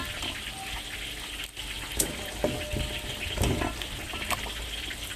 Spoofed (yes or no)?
no